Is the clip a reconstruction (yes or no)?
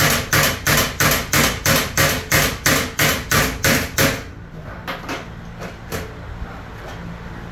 no